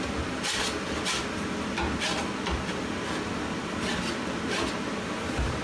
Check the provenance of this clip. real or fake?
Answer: real